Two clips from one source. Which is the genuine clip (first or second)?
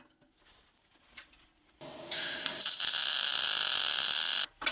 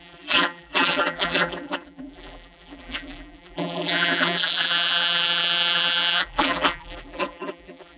first